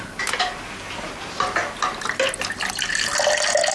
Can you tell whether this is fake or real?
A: real